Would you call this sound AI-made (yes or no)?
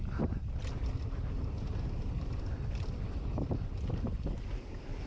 yes